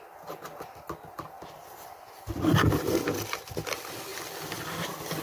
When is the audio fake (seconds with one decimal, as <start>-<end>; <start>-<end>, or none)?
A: none